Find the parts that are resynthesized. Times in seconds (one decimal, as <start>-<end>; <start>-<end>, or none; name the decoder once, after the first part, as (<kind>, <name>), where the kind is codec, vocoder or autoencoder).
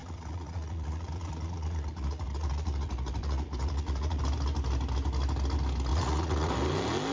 0.0-4.2 (vocoder, Vocos); 5.9-6.5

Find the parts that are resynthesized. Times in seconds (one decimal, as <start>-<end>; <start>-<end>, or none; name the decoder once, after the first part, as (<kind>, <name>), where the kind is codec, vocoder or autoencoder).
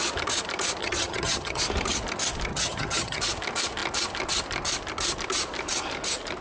0.8-1.6 (vocoder, HiFi-GAN); 2.5-3.2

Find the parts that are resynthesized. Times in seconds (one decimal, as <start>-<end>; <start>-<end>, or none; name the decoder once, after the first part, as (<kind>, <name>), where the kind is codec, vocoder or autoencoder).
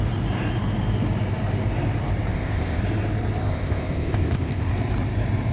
2.3-2.8 (codec, ZipCodec); 3.4-4.7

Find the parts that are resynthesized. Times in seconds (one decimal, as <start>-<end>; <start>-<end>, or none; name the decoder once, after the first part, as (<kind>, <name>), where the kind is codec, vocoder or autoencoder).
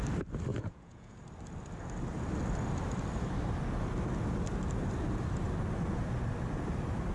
0.5-1.2 (vocoder, Vocos)